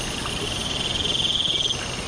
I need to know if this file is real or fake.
real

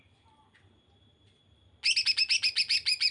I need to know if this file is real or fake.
real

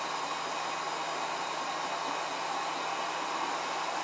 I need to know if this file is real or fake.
real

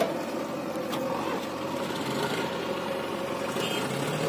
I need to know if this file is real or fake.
real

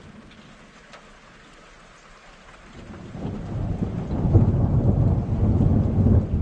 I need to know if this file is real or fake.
real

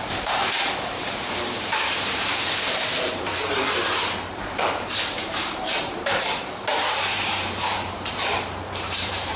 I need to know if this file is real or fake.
fake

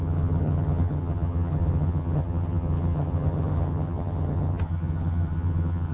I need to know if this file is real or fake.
fake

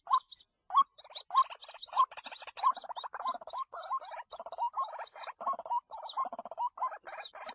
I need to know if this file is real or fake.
real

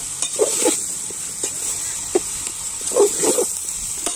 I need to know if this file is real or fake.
fake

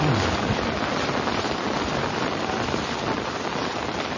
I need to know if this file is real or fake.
real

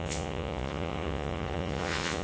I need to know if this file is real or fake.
fake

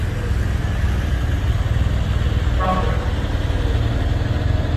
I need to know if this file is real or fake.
real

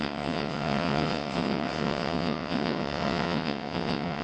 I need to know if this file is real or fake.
fake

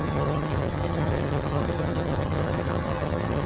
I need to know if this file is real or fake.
fake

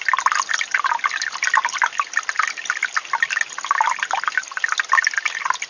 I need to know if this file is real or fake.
real